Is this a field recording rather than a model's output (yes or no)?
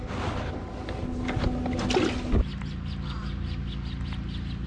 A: yes